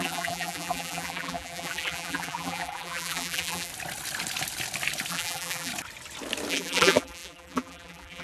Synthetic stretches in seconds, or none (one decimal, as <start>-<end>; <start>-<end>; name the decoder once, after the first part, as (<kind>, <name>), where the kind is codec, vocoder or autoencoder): 0.0-3.7 (vocoder, BigVGAN v2); 5.1-5.7; 6.5-8.2